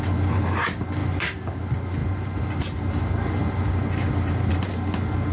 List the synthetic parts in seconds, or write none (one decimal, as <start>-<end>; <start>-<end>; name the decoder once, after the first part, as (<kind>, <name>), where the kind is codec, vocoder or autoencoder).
1.0-1.6 (vocoder, BigVGAN v2); 2.0-2.6; 3.4-4.7